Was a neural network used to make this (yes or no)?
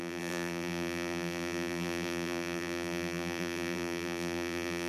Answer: yes